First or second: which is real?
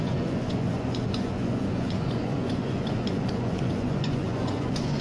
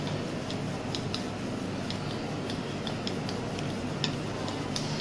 second